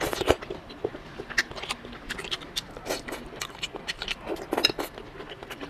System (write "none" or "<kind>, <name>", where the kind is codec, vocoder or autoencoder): none